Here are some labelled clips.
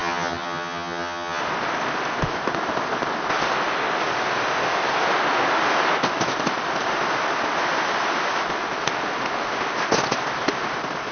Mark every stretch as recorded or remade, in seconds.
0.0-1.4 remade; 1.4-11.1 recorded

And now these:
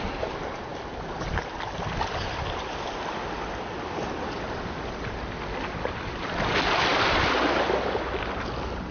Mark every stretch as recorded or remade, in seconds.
0.0-8.9 recorded